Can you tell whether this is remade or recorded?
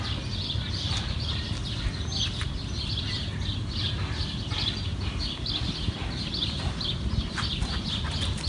recorded